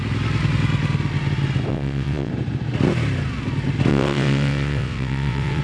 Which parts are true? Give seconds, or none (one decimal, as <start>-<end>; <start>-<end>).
0.0-1.7; 2.3-3.9